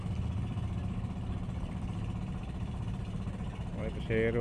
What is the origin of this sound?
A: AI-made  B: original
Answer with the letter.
A